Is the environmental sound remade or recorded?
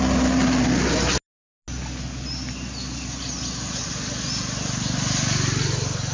recorded